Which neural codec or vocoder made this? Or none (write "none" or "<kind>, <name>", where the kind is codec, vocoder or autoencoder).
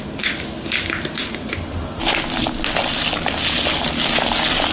none